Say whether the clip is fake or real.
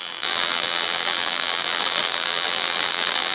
fake